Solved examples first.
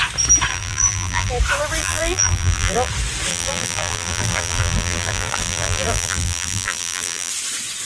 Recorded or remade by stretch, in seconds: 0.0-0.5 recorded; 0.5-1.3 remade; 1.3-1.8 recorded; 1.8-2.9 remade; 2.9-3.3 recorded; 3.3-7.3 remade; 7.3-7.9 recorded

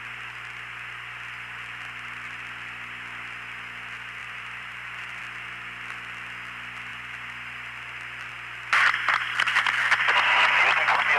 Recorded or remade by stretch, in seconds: 0.0-4.2 recorded; 4.2-5.2 remade; 5.2-11.2 recorded